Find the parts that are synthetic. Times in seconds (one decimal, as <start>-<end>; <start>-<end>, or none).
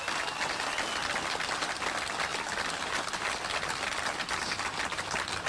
none